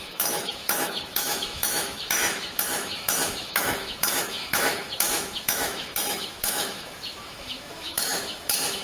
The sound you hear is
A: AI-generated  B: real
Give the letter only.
A